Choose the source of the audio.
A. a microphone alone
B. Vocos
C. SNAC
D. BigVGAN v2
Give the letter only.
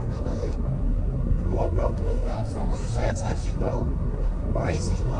C